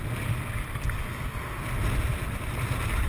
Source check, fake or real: real